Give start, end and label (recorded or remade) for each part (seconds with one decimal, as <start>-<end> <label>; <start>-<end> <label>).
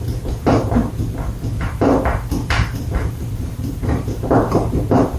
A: 0.0-0.8 remade; 0.8-1.5 recorded; 1.5-5.2 remade